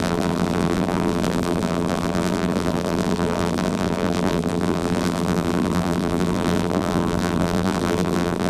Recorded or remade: remade